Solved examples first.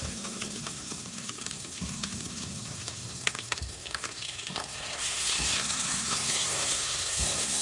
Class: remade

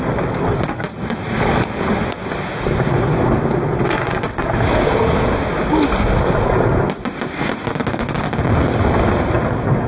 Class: recorded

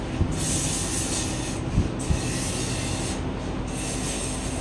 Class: recorded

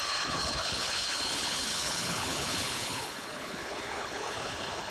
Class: remade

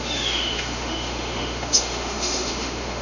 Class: remade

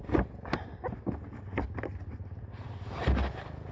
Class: remade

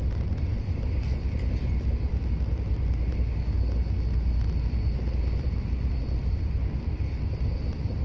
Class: recorded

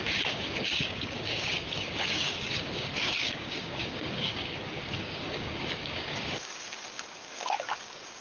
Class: remade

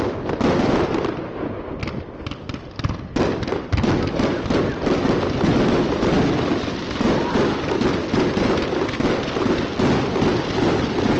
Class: recorded